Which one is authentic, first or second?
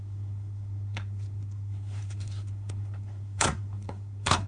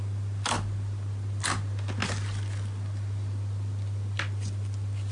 second